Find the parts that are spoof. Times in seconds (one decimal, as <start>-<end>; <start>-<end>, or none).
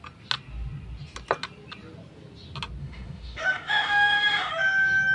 2.8-4.5